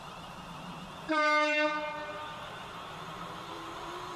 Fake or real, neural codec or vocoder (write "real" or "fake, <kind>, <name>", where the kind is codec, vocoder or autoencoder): fake, vocoder, BigVGAN v2